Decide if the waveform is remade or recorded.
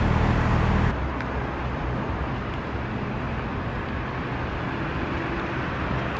recorded